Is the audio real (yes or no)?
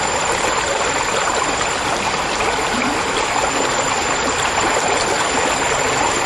yes